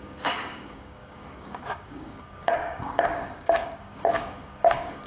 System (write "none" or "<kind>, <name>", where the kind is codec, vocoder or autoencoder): codec, DAC